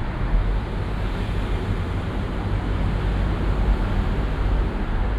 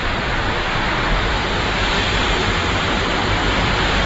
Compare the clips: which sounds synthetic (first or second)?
second